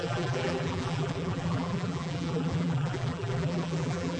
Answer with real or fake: fake